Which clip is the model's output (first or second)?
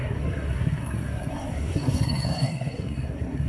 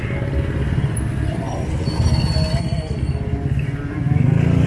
first